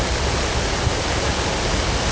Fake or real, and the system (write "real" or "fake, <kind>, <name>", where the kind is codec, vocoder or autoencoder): real